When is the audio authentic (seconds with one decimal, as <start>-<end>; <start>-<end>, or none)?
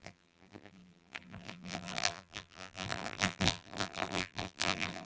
none